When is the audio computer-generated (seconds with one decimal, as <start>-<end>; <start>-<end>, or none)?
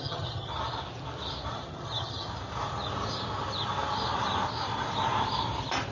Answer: 0.0-0.5; 1.5-2.3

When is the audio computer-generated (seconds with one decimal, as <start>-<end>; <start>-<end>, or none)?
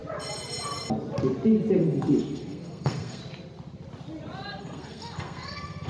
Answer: 1.8-3.2; 4.6-5.9